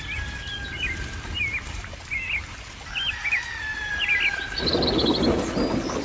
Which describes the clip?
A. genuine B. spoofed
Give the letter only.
A